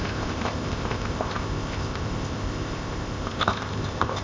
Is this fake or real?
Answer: fake